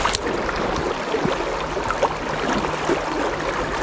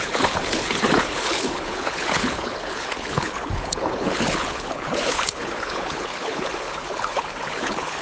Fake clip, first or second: second